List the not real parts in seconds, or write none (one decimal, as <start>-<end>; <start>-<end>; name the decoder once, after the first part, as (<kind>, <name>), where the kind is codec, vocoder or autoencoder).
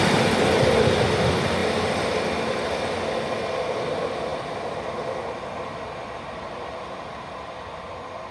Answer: 1.6-2.2 (vocoder, BigVGAN v2)